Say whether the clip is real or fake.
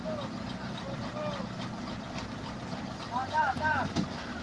real